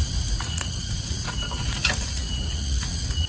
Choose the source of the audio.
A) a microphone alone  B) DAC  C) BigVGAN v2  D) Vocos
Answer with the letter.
D